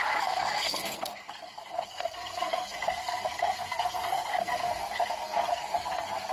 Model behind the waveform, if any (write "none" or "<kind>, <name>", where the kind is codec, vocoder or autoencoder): codec, SNAC